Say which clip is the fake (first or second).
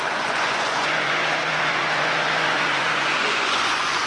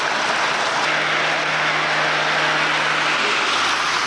first